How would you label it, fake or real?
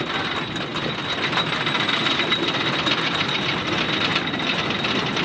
real